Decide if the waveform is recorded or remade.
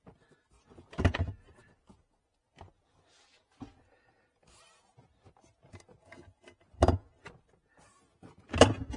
recorded